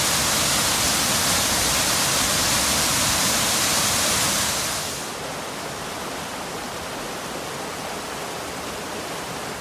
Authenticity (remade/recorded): recorded